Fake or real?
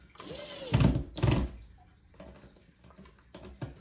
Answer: real